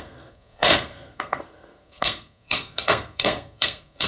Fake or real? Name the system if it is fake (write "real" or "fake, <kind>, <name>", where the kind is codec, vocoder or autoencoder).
fake, codec, SNAC